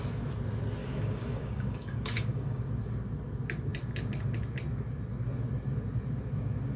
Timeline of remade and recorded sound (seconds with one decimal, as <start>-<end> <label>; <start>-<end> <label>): 0.0-0.8 recorded; 0.8-2.6 remade; 2.6-6.8 recorded